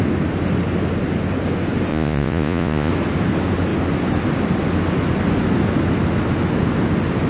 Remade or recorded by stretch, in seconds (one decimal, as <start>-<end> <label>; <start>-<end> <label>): 0.0-1.9 recorded; 1.9-2.9 remade; 2.9-7.3 recorded